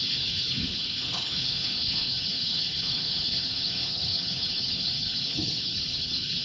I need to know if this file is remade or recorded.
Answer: remade